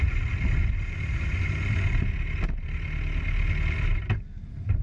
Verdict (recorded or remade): recorded